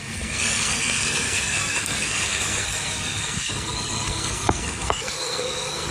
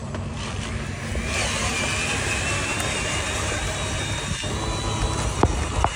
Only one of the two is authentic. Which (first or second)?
second